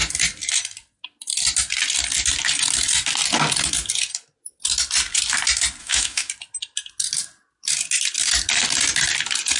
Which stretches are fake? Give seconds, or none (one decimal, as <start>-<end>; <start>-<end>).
5.8-6.3